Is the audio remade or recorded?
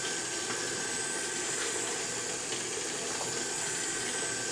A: recorded